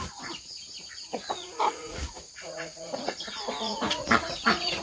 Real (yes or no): no